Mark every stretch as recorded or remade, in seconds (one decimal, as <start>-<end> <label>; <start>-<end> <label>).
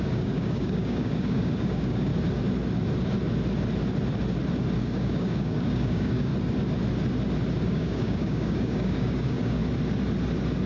0.0-2.1 remade; 2.1-4.8 recorded; 4.8-6.3 remade; 6.3-7.6 recorded; 7.6-9.6 remade; 9.6-10.7 recorded